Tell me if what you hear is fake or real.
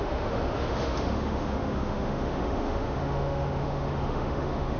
fake